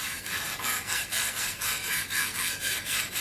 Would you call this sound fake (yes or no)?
yes